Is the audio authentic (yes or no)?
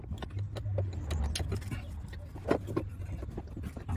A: yes